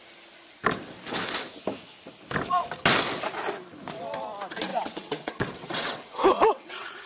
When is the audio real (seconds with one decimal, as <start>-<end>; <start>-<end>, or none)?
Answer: 0.0-4.7